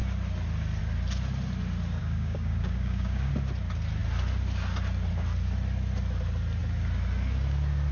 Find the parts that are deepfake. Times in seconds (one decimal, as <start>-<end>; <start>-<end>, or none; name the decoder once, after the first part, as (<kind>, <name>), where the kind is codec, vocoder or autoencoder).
2.0-3.3 (codec, DAC)